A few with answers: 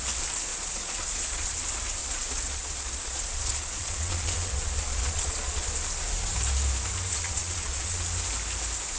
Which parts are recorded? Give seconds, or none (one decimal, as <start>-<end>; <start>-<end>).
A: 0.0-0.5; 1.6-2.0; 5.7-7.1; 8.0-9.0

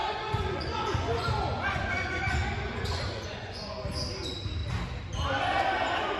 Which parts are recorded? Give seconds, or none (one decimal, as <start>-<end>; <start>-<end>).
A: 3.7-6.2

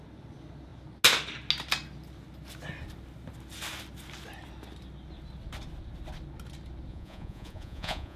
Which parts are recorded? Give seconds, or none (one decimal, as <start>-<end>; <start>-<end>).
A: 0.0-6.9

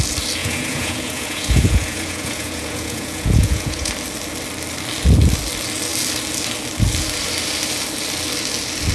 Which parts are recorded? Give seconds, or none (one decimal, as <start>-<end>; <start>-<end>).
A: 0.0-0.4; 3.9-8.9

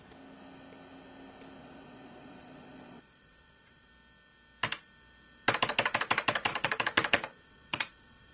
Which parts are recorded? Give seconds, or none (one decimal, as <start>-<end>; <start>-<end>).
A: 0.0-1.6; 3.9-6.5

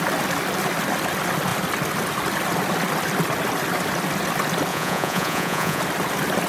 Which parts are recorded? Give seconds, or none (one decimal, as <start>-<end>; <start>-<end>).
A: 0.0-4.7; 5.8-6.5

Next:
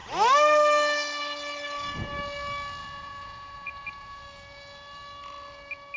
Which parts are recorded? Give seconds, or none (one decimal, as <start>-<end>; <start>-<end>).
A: 0.0-2.8; 4.2-6.0

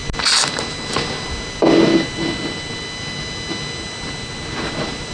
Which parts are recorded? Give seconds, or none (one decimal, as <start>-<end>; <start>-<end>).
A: 0.0-5.1